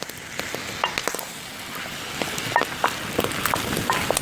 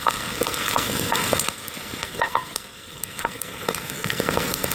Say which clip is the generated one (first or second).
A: second